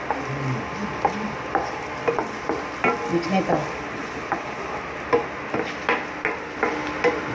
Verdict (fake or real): real